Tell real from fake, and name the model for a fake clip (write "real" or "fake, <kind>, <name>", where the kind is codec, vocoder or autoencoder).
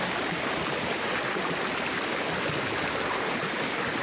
real